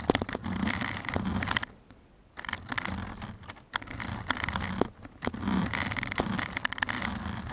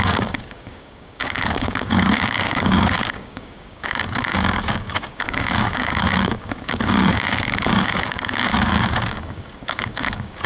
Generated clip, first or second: second